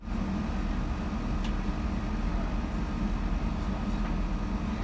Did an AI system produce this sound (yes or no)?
no